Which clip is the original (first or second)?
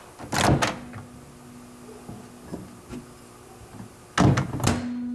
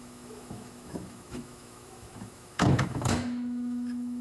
first